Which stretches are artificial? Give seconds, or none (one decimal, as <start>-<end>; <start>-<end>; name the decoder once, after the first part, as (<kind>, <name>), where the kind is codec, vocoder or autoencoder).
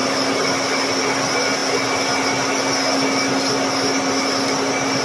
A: none